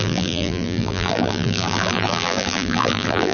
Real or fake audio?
fake